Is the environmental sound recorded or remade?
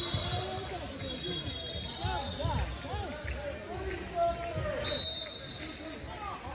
recorded